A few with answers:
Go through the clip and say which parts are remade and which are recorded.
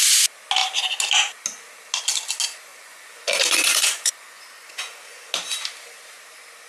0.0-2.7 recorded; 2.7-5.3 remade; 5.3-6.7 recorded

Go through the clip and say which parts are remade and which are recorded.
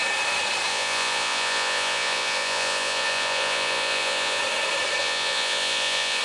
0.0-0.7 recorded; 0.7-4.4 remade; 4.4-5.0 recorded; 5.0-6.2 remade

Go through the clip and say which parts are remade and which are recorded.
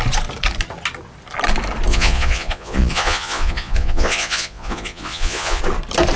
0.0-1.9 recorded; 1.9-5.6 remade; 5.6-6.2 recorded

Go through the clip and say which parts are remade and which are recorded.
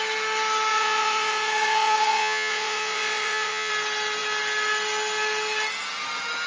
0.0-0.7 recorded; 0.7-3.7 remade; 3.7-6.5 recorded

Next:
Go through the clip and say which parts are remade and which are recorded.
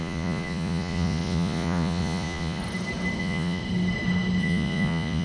0.0-2.6 remade; 2.6-3.2 recorded; 3.2-3.6 remade; 3.6-4.4 recorded; 4.4-5.2 remade